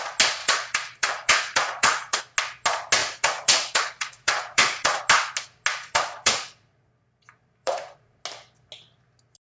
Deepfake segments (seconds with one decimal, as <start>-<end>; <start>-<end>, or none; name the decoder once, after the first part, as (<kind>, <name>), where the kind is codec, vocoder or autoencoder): 0.4-2.2 (vocoder, Vocos); 3.0-5.0; 5.7-6.9; 7.6-8.2

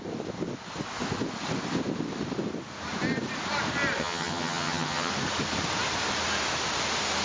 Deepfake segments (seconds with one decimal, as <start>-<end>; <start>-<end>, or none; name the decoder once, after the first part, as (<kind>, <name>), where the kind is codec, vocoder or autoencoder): 4.0-5.1 (vocoder, HiFi-GAN)